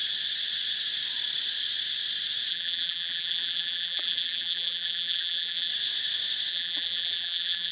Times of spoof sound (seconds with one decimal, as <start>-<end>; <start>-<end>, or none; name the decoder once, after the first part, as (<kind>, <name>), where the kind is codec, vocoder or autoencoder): 2.5-5.7 (vocoder, BigVGAN v2); 6.5-7.7